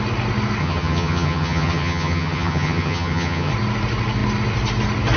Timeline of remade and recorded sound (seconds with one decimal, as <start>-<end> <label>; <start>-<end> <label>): 0.0-0.6 recorded; 0.6-3.5 remade; 3.5-5.2 recorded